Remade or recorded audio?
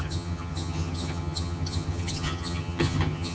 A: remade